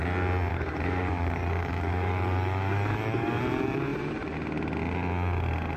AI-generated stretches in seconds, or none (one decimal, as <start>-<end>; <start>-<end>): 0.5-3.4